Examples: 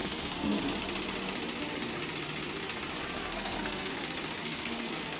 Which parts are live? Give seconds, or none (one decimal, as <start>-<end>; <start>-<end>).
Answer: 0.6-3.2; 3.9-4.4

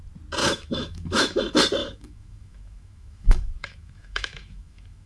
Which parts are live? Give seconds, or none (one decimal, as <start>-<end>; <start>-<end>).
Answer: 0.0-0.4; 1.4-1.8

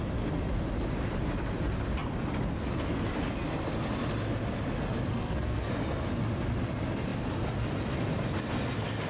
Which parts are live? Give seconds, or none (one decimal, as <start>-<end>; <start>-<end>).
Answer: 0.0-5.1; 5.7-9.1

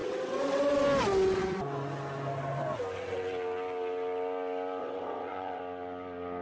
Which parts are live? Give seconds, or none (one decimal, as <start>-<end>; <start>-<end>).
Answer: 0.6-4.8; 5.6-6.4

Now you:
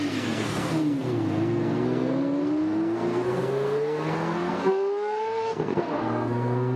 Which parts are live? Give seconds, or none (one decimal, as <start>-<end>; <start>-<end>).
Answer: none

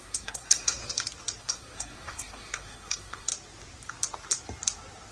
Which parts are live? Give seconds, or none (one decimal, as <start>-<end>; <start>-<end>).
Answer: 0.8-1.4; 3.3-5.1